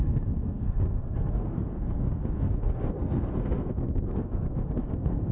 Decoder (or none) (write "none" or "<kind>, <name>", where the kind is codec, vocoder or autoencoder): codec, SNAC